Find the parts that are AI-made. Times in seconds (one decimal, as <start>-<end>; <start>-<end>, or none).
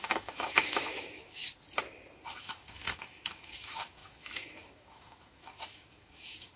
0.0-1.4; 2.4-6.6